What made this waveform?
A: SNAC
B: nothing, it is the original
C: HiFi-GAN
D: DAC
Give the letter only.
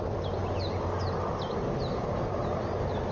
B